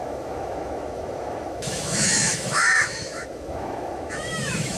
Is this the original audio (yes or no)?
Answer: no